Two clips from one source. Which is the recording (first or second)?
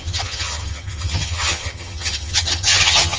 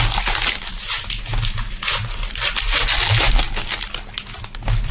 second